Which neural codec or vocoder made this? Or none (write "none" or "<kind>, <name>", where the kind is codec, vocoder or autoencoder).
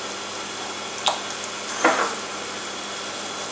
none